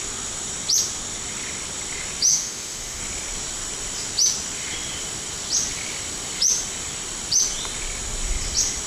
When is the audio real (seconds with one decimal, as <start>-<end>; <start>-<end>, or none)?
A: 0.0-2.3; 3.0-8.9